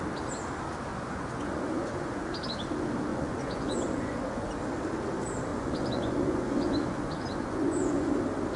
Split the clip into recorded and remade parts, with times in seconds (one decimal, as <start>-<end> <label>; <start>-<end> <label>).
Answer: 0.0-0.9 recorded; 0.9-2.3 remade; 2.3-3.1 recorded; 3.1-4.5 remade; 4.5-5.5 recorded; 5.5-8.1 remade; 8.1-8.6 recorded